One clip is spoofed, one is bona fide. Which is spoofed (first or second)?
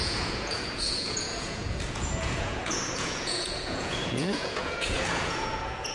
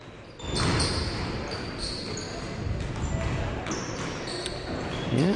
first